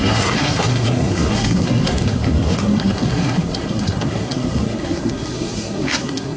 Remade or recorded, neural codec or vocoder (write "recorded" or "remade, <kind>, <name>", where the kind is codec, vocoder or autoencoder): remade, codec, SNAC